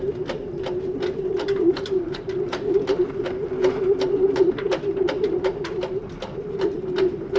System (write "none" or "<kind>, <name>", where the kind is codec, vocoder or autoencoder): none